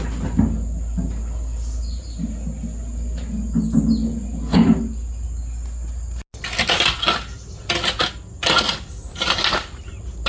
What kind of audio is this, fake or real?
real